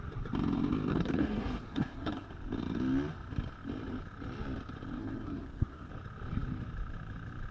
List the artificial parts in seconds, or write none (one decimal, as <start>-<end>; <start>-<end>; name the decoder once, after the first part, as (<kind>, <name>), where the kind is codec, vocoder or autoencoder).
0.9-2.3 (codec, SNAC); 5.0-5.9